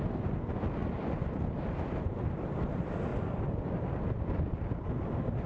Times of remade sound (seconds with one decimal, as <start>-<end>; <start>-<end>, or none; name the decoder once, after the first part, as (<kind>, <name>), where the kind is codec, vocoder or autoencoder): none